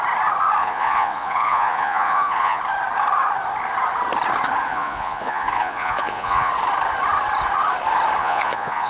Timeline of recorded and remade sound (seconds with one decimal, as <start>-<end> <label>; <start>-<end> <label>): 0.0-0.6 recorded; 0.6-2.6 remade; 2.6-4.7 recorded; 4.7-6.5 remade; 6.5-8.2 recorded; 8.2-8.9 remade